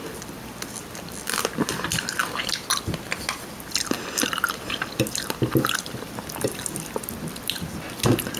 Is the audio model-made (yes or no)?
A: no